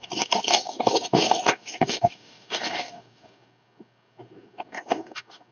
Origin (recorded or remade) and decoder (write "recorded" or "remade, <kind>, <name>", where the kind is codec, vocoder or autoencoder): remade, codec, DAC